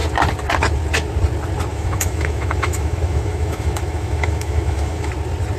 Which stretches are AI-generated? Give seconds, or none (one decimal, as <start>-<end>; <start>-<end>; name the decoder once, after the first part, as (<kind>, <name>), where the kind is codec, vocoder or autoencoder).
1.7-5.1 (autoencoder, DAC-VAE)

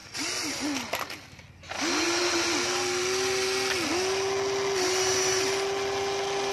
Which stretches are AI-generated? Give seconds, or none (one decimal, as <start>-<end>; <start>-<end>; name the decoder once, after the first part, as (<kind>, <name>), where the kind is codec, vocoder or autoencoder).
none

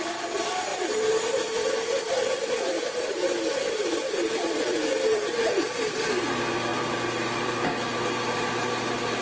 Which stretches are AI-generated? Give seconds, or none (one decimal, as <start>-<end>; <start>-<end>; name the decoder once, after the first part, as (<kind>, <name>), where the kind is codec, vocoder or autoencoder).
0.7-2.0 (vocoder, BigVGAN v2); 2.7-5.6

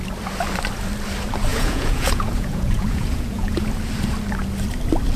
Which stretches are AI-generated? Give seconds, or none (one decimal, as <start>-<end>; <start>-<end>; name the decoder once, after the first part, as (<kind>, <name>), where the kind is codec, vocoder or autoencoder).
1.5-3.7 (vocoder, Vocos)

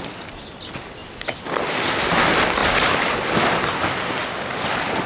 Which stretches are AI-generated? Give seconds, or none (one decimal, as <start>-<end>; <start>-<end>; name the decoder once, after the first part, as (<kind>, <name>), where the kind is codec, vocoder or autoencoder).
none

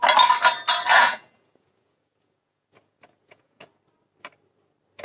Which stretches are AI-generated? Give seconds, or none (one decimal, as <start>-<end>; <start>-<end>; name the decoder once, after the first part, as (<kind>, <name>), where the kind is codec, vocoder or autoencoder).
0.9-3.6 (vocoder, Vocos)

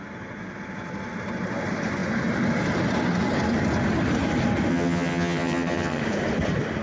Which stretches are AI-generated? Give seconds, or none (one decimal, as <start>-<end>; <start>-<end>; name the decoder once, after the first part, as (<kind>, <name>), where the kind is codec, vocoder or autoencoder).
4.7-6.0 (vocoder, HiFi-GAN)